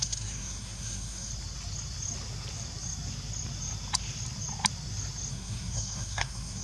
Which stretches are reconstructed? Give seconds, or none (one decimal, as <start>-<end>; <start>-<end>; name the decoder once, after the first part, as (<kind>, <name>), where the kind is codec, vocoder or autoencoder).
0.0-1.3 (codec, SNAC); 5.3-6.6